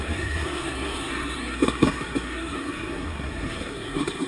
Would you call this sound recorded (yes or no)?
no